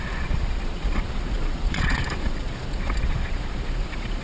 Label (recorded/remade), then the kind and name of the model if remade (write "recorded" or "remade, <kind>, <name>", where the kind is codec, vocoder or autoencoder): remade, vocoder, Vocos